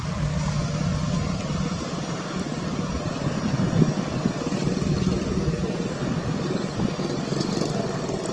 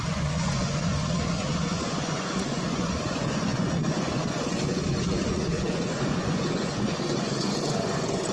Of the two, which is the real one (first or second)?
first